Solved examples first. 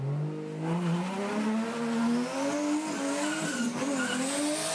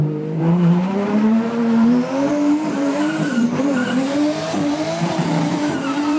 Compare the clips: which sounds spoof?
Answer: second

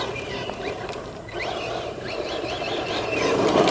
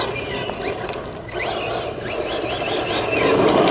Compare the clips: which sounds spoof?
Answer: first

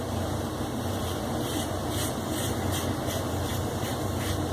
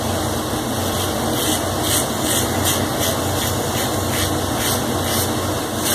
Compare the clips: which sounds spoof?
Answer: first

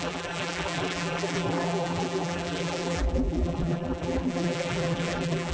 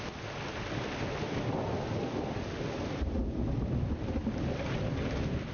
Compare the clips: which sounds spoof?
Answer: first